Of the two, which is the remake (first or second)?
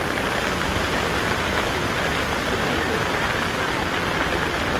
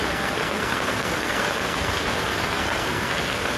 second